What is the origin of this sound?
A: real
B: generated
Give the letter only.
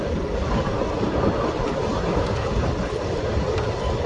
A